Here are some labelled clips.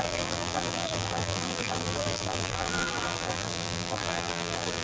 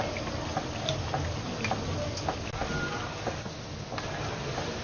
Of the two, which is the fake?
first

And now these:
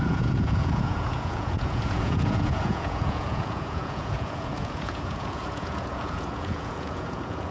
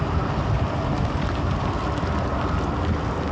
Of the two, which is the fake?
first